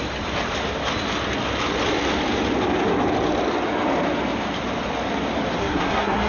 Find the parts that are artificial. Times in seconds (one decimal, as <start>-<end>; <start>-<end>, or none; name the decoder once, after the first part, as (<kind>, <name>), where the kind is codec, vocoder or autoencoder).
5.6-6.3 (codec, SNAC)